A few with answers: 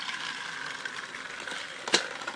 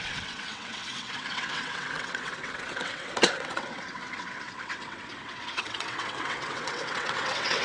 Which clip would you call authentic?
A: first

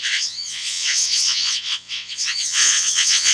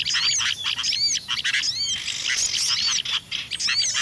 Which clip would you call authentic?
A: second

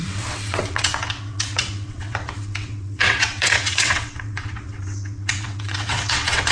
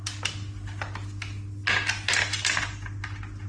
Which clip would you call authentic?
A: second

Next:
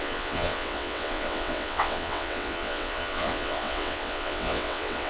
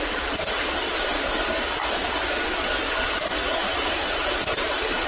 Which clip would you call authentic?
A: second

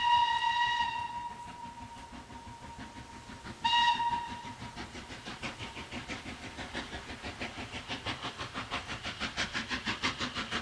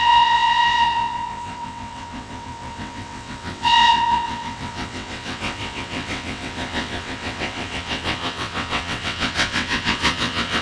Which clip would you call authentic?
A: first